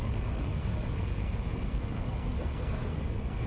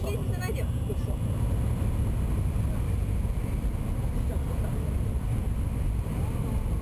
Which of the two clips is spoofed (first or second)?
first